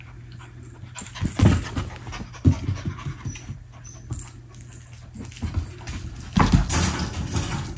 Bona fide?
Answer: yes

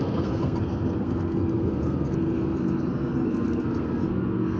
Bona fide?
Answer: no